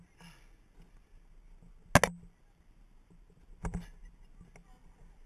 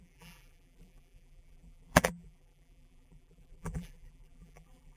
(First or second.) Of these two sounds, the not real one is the second